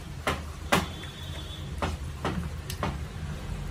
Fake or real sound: fake